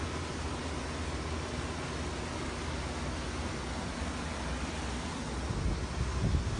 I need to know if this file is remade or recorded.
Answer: recorded